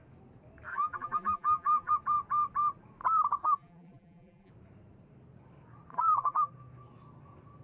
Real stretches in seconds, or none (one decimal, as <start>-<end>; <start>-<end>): 0.0-0.7; 1.9-3.4; 4.5-5.9; 6.5-7.6